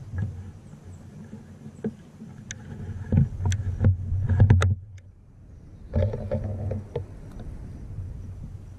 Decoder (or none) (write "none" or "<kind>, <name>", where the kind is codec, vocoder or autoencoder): none